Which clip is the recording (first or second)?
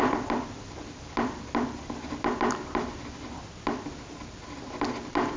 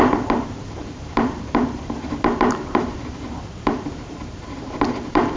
first